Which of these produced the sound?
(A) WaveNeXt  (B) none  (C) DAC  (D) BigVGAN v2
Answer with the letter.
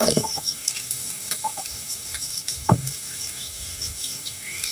C